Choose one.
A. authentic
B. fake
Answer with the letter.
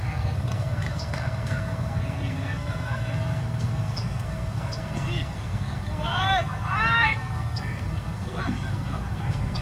B